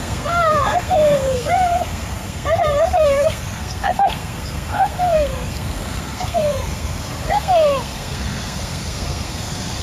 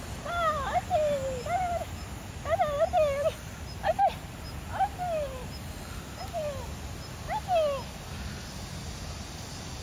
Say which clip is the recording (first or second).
second